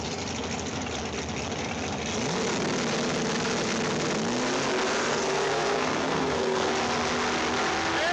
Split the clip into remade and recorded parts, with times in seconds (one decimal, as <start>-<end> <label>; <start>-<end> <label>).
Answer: 0.0-5.1 recorded; 5.1-6.7 remade; 6.7-8.1 recorded